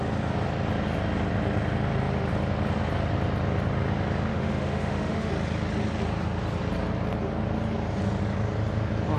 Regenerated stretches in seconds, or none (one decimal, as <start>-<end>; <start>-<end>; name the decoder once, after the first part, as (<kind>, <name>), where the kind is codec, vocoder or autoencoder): 4.3-5.3 (autoencoder, DAC-VAE)